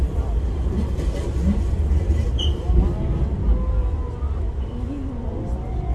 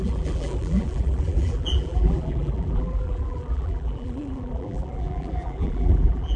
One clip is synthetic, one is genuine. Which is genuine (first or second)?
first